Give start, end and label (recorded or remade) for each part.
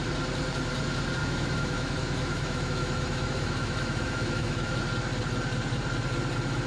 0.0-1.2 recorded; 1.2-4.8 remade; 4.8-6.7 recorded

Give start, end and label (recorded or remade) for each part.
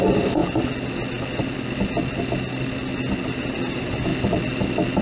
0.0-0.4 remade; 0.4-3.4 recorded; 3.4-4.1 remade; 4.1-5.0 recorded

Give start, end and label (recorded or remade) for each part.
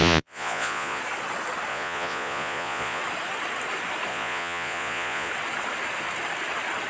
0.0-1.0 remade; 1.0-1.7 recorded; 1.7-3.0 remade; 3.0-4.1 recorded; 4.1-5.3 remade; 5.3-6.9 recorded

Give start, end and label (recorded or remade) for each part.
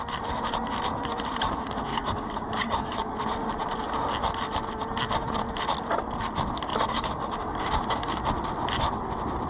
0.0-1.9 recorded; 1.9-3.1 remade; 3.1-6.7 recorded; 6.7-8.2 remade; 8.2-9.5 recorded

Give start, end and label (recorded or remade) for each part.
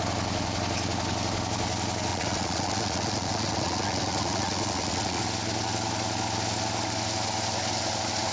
0.0-2.1 recorded; 2.1-5.2 remade; 5.2-8.3 recorded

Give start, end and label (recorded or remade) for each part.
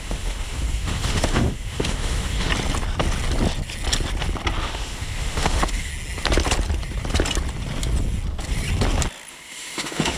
0.0-2.5 remade; 2.5-4.6 recorded; 4.6-5.9 remade; 5.9-9.3 recorded; 9.3-10.2 remade